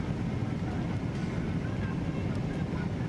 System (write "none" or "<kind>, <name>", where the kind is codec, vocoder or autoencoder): none